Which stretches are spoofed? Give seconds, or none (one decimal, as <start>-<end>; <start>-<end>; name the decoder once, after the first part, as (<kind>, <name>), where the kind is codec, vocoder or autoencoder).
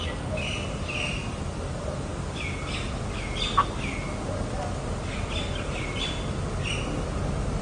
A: none